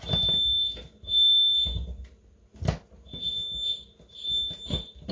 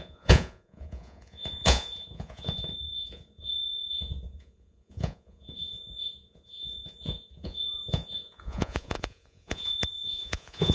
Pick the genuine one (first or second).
first